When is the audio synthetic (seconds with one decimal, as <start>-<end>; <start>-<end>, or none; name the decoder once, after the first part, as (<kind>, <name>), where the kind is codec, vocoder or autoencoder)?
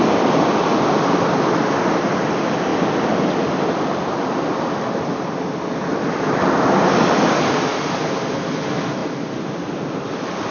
none